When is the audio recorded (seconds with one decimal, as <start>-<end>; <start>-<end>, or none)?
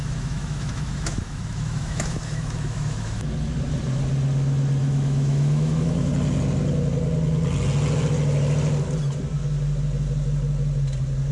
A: 3.3-4.8; 6.1-11.3